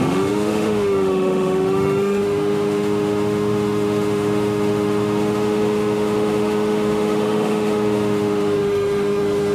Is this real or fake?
fake